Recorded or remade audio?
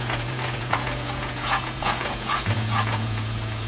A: remade